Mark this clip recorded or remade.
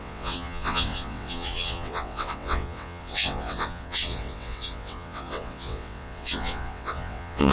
remade